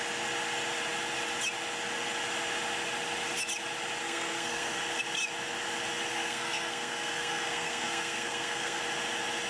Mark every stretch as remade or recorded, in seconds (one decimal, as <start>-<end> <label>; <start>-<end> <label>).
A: 0.0-4.0 recorded; 4.0-4.8 remade; 4.8-6.1 recorded; 6.1-8.8 remade; 8.8-9.5 recorded